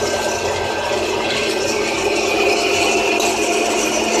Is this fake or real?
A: real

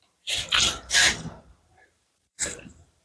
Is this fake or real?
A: fake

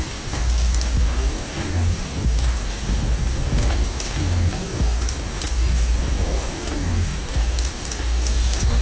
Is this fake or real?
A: fake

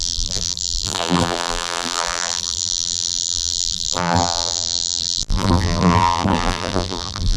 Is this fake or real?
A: fake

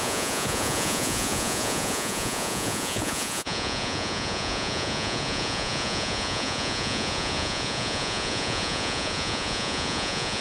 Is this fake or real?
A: fake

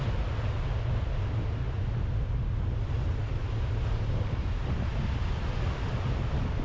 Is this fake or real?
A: real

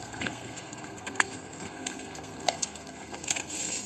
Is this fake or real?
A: fake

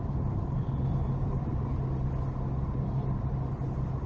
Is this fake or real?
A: real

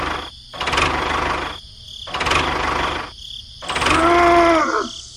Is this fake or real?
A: real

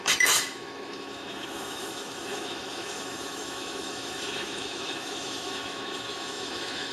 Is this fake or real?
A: fake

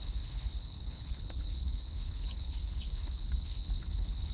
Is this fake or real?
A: fake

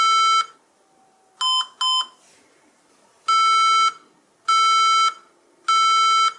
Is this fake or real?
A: real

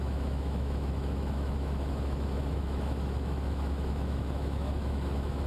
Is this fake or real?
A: fake